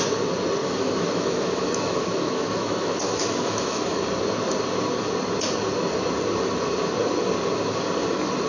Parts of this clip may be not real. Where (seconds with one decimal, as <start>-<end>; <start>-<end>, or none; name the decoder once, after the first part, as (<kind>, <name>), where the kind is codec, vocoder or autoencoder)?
0.6-4.0 (autoencoder, DAC-VAE)